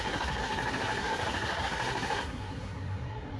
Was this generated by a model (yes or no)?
yes